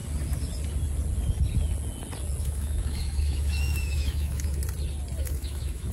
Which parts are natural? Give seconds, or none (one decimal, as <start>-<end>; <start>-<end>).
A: 0.0-2.4; 4.6-5.2